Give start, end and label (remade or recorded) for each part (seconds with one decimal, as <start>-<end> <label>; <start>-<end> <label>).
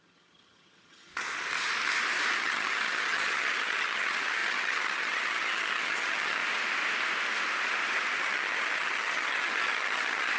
0.0-1.1 remade; 1.1-2.4 recorded; 2.4-6.4 remade; 6.4-8.2 recorded; 8.2-10.4 remade